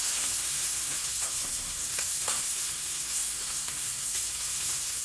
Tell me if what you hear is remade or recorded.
remade